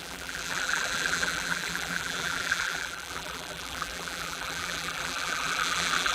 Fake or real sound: fake